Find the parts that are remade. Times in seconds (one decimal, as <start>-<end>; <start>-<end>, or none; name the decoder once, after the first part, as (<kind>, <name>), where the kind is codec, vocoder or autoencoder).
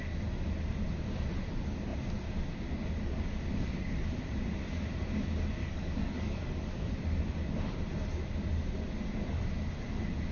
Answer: 5.6-6.9 (codec, DAC)